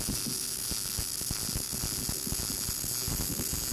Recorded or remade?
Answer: recorded